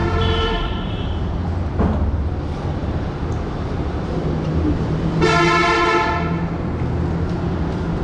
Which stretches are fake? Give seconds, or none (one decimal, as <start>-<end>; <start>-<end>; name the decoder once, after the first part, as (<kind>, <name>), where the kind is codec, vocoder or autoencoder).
0.0-1.4 (vocoder, BigVGAN v2); 2.8-6.1